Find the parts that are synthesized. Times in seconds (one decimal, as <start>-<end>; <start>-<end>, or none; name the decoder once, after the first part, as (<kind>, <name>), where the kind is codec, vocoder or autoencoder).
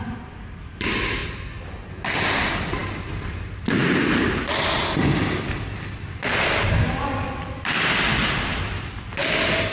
2.8-3.3 (vocoder, BigVGAN v2)